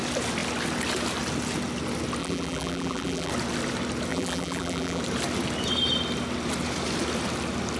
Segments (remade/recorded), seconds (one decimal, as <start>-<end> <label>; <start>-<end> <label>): 0.0-2.2 recorded; 2.2-3.3 remade; 3.3-4.1 recorded; 4.1-5.0 remade; 5.0-7.8 recorded